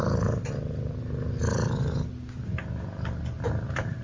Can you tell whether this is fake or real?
real